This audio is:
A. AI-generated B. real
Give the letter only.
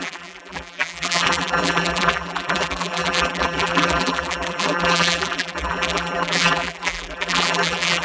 A